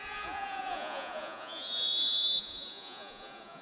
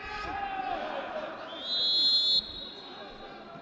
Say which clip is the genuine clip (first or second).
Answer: second